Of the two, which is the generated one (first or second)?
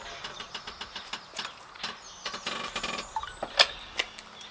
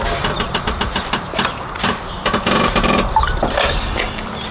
second